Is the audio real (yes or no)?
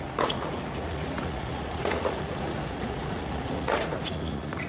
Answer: no